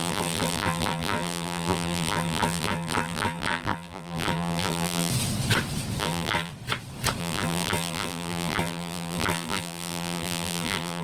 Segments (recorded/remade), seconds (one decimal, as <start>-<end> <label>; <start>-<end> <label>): 0.0-5.1 remade; 5.1-6.0 recorded; 6.0-6.5 remade; 6.5-7.2 recorded; 7.2-11.0 remade